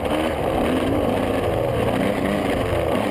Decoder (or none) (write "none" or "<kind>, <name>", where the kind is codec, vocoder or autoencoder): none